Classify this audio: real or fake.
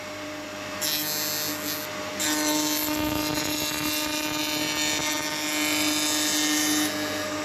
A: real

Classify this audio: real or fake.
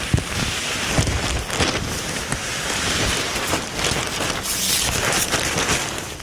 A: real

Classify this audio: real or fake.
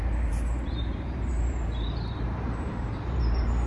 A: fake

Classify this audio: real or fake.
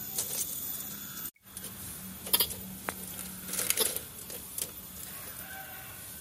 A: real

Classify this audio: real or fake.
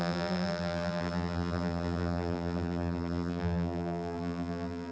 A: fake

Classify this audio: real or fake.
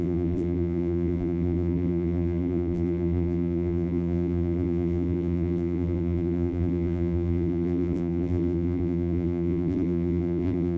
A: fake